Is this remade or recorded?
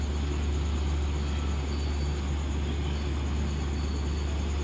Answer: recorded